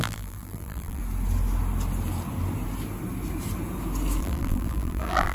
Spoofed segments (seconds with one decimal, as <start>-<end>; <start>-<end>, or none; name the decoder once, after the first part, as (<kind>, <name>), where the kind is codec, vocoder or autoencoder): 0.0-1.0 (vocoder, BigVGAN v2); 4.2-5.3